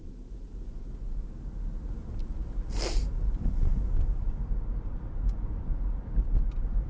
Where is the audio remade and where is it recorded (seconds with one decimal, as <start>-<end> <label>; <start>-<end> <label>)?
0.0-6.9 recorded